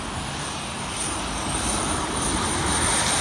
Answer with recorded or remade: recorded